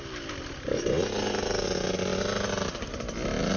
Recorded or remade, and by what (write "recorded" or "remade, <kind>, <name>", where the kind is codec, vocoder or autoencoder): recorded